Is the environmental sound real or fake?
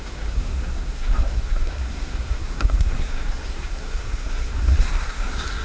fake